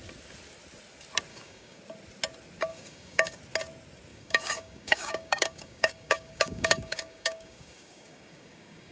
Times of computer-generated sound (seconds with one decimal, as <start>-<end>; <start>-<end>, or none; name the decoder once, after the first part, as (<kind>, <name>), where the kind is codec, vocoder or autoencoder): 1.3-1.8 (codec, DAC); 2.7-3.4; 4.1-8.9